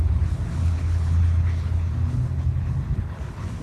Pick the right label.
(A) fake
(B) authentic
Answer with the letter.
A